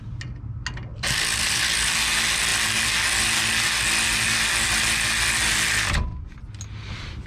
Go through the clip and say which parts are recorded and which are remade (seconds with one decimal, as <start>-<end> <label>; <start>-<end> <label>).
0.0-0.9 recorded; 0.9-1.6 remade; 1.6-6.1 recorded; 6.1-7.3 remade